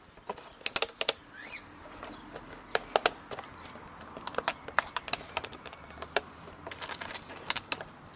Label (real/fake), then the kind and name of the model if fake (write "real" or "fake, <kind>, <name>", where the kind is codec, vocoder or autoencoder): real